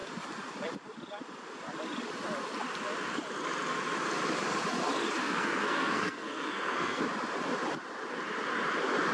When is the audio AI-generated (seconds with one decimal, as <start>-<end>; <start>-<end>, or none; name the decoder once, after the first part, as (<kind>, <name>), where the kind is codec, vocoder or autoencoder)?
5.2-7.0 (codec, SNAC)